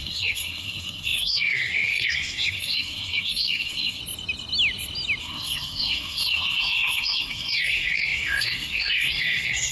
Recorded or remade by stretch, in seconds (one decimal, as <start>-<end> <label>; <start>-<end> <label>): 0.0-4.0 remade; 4.0-5.2 recorded; 5.2-9.7 remade